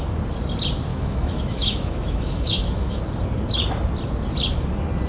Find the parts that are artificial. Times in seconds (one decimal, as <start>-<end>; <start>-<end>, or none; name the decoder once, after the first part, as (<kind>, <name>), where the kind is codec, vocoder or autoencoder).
0.9-3.0 (autoencoder, DAC-VAE)